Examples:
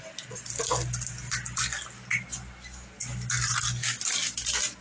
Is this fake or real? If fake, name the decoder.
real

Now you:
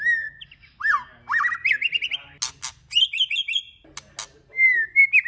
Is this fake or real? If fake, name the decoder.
real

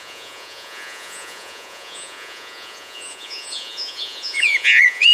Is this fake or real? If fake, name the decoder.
fake, vocoder, Vocos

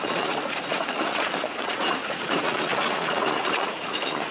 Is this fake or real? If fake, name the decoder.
fake, vocoder, Vocos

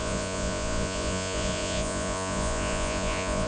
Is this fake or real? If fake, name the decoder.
fake, vocoder, Vocos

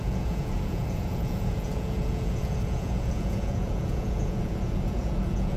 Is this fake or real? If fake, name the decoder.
fake, vocoder, Vocos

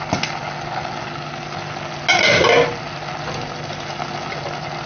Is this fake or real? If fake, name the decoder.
real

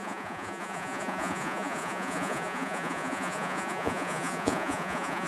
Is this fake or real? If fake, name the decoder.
fake, vocoder, Vocos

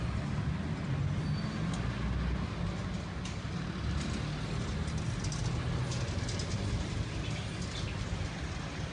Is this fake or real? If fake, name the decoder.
real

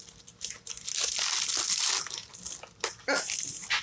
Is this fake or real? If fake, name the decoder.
real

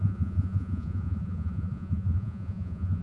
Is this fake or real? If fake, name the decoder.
fake, vocoder, Vocos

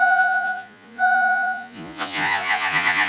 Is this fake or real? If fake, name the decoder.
fake, vocoder, Vocos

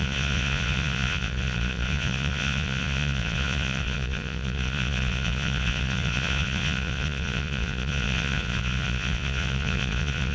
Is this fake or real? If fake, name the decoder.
fake, vocoder, Vocos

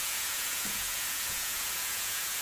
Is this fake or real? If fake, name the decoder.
fake, vocoder, Vocos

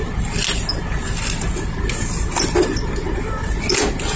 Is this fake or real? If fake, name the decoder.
real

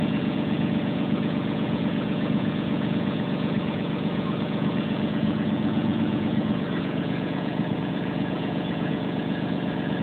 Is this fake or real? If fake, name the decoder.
fake, vocoder, Vocos